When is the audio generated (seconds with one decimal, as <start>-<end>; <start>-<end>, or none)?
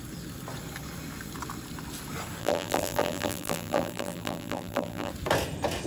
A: 2.4-5.1